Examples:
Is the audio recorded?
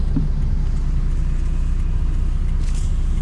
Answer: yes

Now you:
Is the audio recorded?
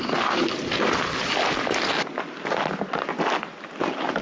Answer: yes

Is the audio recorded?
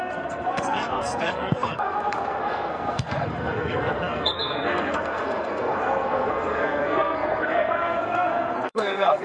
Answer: no